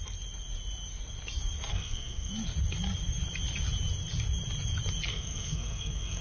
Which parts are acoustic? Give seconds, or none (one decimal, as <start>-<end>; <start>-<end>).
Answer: 0.0-1.7; 2.3-5.1